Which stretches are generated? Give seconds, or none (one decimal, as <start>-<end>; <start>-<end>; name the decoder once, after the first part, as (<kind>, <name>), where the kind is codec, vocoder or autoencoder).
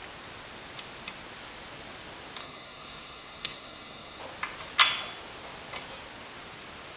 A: 2.4-4.2 (codec, SNAC)